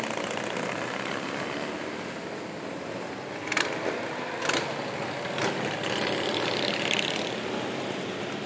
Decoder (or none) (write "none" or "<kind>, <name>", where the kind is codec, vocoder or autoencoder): none